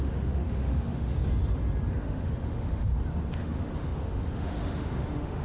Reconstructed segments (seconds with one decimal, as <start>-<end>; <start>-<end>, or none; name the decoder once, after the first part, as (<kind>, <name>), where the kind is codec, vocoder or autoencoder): 0.0-1.2 (autoencoder, DAC-VAE); 1.9-2.9; 3.4-5.4